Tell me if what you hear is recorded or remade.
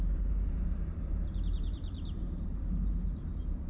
remade